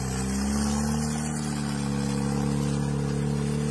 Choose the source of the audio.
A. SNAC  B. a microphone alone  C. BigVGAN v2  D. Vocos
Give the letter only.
B